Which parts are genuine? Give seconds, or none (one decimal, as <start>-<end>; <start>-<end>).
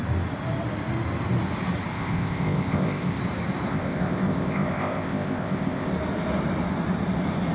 0.0-1.9; 3.2-3.7; 5.9-7.5